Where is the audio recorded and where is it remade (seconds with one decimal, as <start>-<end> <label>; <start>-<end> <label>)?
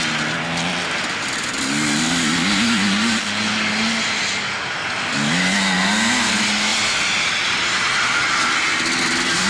0.0-9.5 recorded